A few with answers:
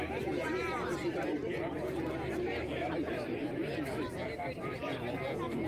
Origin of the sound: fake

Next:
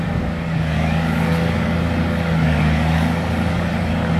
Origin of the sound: fake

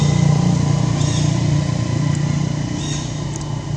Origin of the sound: real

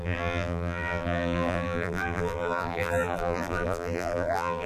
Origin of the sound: fake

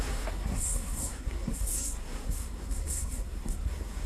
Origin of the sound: fake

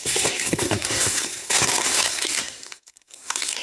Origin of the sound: fake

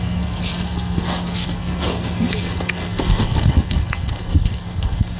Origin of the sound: fake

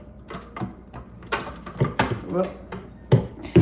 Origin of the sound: real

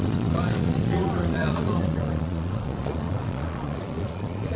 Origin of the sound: fake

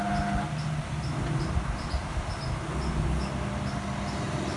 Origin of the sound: real